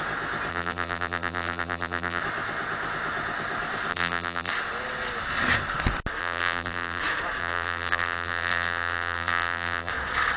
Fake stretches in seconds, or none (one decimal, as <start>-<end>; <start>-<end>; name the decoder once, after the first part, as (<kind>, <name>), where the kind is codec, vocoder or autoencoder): 0.5-2.2 (vocoder, BigVGAN v2); 3.9-4.5; 6.2-7.0; 7.4-9.9